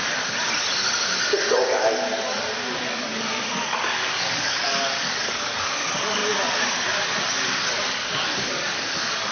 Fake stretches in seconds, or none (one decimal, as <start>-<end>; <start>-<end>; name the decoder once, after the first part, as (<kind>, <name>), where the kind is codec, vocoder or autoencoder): 2.8-6.2 (codec, DAC); 8.5-9.3